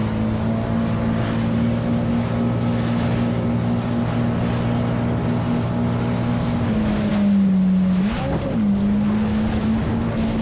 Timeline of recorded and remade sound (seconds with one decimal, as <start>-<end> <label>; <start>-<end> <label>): 0.0-10.4 recorded

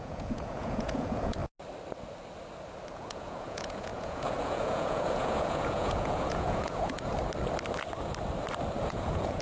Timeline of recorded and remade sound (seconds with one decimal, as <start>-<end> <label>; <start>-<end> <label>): 0.0-1.4 remade; 1.4-2.9 recorded; 2.9-7.1 remade; 7.1-8.8 recorded; 8.8-9.4 remade

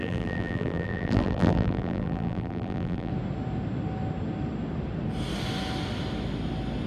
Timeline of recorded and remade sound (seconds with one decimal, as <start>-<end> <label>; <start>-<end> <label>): 0.0-3.1 remade; 3.1-6.9 recorded

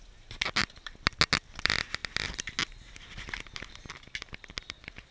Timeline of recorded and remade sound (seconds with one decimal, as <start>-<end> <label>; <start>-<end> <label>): 0.0-5.1 recorded

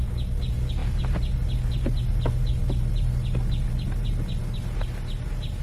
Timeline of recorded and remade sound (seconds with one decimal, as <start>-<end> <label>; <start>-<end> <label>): 0.0-5.6 recorded

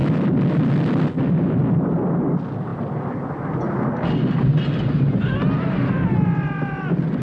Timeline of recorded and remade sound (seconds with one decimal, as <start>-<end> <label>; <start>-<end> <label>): 0.0-7.2 recorded

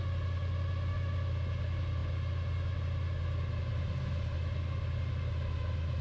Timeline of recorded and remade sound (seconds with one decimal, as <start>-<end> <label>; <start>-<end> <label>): 0.0-6.0 recorded

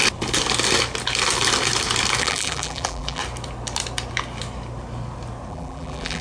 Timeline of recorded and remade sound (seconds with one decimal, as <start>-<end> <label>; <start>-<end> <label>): 0.0-2.2 recorded; 2.2-3.2 remade; 3.2-5.5 recorded; 5.5-6.2 remade